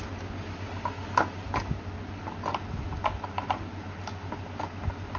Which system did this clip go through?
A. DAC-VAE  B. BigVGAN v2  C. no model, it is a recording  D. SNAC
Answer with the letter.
C